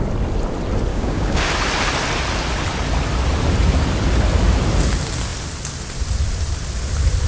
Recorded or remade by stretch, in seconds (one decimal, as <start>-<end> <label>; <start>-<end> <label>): 0.0-0.9 recorded; 0.9-1.5 remade; 1.5-7.3 recorded